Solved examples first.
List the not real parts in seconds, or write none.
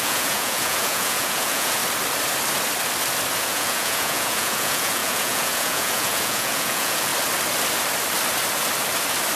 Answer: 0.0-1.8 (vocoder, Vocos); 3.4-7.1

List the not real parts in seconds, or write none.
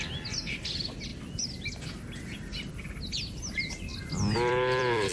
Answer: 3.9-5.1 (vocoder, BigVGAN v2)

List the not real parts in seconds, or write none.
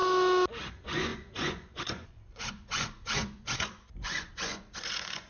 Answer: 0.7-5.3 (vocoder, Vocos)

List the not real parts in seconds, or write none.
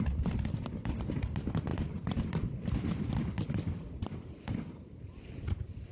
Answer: none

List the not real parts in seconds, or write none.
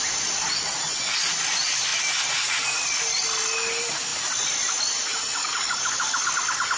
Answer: 5.4-6.3 (codec, DAC)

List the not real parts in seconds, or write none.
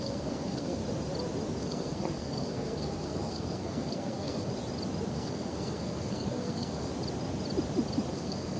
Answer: 0.0-0.8 (codec, SNAC); 1.6-4.5; 5.1-6.9; 8.1-8.6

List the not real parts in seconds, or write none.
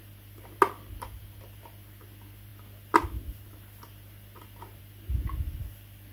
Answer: none